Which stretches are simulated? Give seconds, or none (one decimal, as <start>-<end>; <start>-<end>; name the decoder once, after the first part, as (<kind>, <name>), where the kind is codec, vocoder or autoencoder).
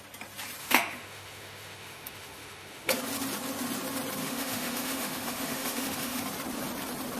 0.6-2.9 (autoencoder, DAC-VAE); 4.2-6.2